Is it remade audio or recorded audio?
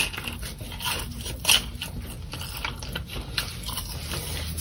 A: recorded